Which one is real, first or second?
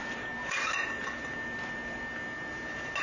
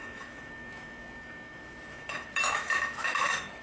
first